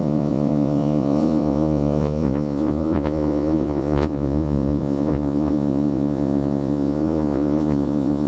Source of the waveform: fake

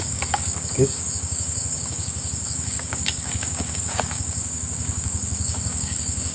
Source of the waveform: fake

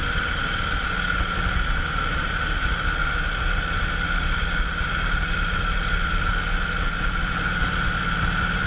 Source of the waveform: real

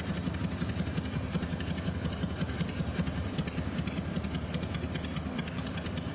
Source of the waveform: real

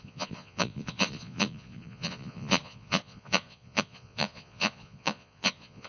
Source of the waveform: fake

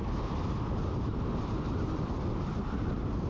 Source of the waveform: real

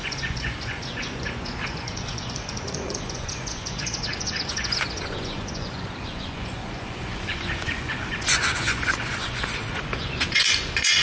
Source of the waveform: fake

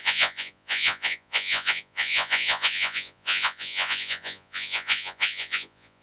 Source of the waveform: fake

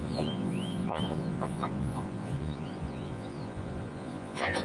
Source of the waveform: fake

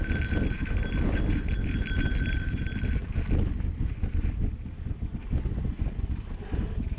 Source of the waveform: real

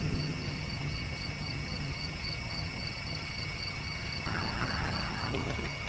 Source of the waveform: fake